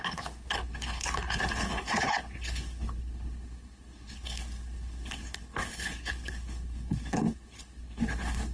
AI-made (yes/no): yes